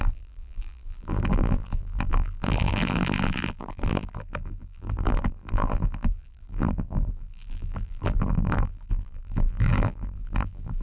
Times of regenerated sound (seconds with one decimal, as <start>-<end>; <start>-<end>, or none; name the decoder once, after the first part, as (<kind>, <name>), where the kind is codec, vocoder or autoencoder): 0.0-10.8 (vocoder, BigVGAN v2)